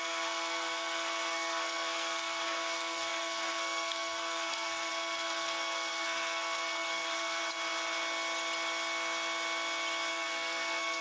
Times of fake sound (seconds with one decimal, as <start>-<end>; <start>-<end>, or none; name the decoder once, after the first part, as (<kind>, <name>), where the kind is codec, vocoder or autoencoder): 0.0-7.4 (codec, SNAC); 10.1-11.0